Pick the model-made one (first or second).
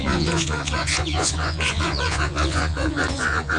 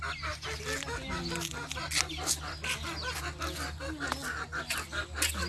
first